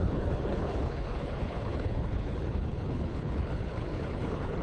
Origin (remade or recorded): remade